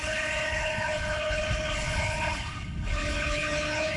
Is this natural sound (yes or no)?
no